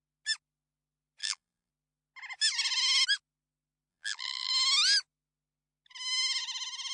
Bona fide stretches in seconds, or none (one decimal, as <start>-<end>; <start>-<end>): 0.0-1.2; 1.7-3.9; 4.5-6.9